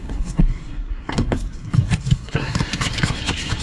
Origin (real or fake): fake